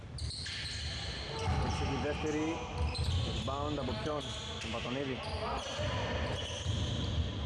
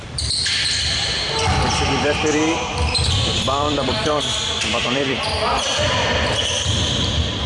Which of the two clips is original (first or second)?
first